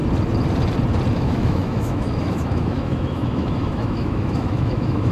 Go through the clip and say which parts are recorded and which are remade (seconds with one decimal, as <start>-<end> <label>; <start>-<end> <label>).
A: 0.0-1.1 recorded; 1.1-5.1 remade